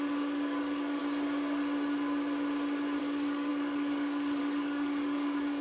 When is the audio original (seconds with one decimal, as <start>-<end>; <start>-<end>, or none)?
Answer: 1.0-3.0